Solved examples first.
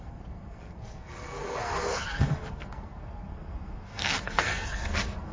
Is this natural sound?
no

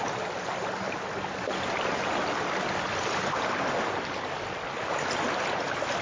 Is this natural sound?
yes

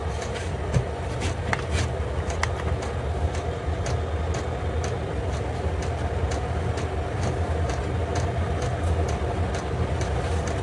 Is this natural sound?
yes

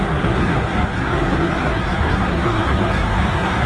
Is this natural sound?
no